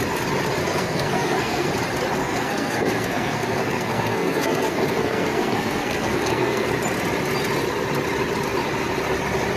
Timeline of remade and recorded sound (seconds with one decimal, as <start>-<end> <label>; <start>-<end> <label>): 0.0-0.6 recorded; 0.6-1.7 remade; 1.7-2.2 recorded; 2.2-6.7 remade; 6.7-9.6 recorded